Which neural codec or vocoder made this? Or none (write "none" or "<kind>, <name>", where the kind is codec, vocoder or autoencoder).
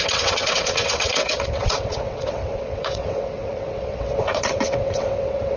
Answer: vocoder, WaveNeXt